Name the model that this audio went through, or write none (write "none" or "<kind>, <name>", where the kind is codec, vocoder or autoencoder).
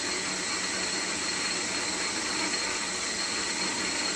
none